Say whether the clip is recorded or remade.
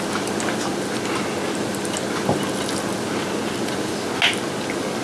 recorded